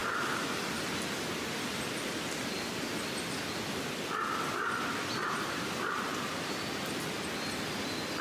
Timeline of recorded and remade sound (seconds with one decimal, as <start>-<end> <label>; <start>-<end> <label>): 0.0-4.8 recorded; 4.8-6.1 remade; 6.1-8.2 recorded